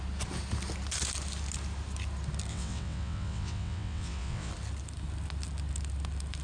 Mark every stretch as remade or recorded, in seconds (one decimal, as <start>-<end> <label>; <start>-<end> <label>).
0.0-2.5 recorded; 2.5-4.5 remade; 4.5-6.4 recorded